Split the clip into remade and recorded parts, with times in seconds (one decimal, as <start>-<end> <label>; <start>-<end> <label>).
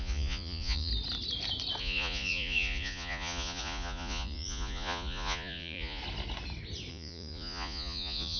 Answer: 0.0-0.9 remade; 0.9-1.8 recorded; 1.8-6.0 remade; 6.0-6.9 recorded; 6.9-8.4 remade